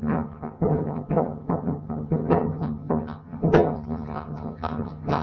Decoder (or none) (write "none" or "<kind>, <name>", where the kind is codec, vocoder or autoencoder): vocoder, HiFi-GAN